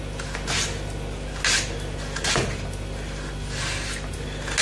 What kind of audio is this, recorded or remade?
recorded